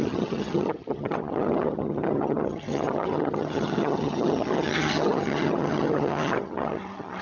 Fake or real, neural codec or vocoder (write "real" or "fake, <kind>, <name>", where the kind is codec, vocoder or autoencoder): fake, vocoder, HiFi-GAN